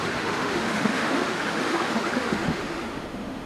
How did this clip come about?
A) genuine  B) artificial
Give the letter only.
B